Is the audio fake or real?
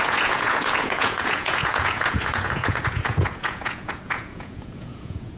fake